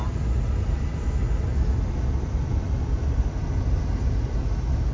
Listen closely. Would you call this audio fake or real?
real